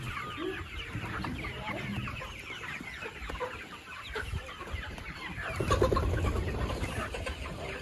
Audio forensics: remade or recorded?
remade